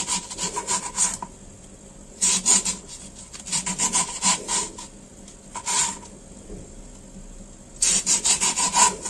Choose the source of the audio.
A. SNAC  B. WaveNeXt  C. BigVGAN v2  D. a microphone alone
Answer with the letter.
D